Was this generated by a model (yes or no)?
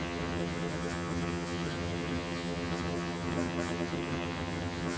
yes